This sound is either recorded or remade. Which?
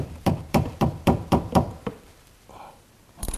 remade